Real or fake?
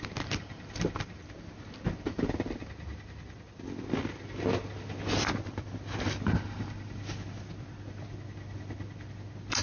real